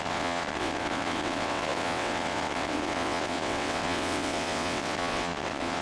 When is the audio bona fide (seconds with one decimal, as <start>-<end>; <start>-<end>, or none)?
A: none